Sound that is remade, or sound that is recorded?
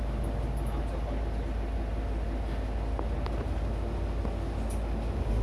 recorded